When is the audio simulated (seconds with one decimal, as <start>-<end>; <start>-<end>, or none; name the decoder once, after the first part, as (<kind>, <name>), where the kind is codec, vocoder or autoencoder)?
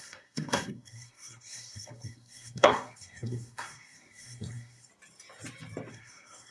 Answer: 0.0-4.9 (codec, SNAC); 5.9-6.5